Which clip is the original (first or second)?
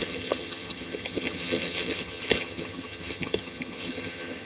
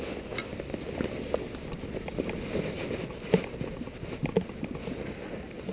second